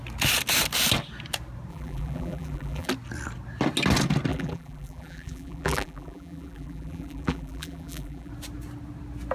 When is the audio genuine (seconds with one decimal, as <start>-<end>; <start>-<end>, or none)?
0.0-1.7; 2.9-4.3; 8.3-9.3